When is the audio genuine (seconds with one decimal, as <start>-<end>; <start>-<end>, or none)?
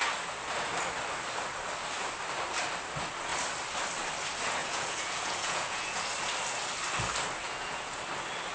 0.0-4.6; 6.1-7.4; 8.0-8.5